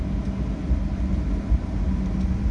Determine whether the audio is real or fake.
real